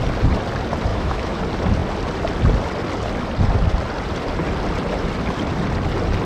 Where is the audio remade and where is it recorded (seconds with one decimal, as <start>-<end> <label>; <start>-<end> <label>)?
0.0-0.9 recorded; 0.9-1.4 remade; 1.4-6.2 recorded